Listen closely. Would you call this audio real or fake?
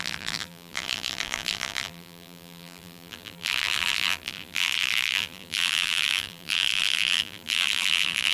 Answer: fake